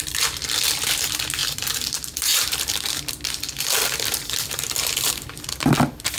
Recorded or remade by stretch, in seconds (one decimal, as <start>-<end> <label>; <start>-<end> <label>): 0.0-6.2 recorded